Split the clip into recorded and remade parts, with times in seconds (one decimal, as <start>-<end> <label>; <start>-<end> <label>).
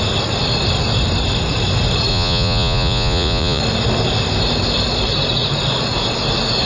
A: 0.0-2.1 recorded; 2.1-3.6 remade; 3.6-6.7 recorded